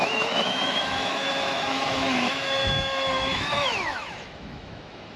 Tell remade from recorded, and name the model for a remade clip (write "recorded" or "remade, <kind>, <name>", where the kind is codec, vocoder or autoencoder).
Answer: remade, autoencoder, DAC-VAE